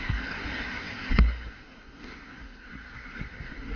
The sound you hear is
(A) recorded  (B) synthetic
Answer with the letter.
B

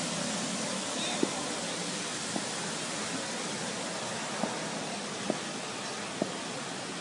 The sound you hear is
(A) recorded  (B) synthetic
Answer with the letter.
A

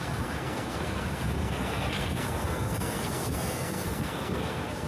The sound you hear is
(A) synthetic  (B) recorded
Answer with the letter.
A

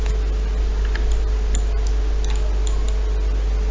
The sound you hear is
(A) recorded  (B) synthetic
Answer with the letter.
A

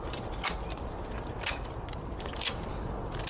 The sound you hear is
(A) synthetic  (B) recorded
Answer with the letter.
B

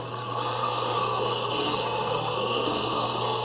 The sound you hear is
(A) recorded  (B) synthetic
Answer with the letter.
B